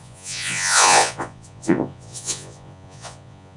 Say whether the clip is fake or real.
fake